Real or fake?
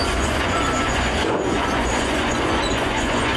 fake